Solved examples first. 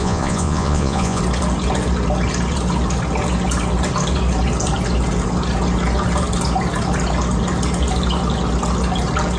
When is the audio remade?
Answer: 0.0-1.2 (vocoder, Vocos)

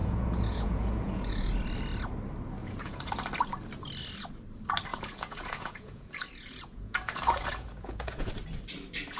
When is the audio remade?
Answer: 0.0-1.6 (vocoder, Vocos); 2.6-3.1; 4.9-8.3

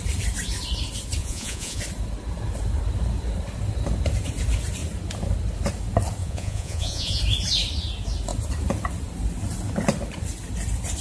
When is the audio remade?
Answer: 1.2-1.8 (vocoder, Vocos); 6.2-7.2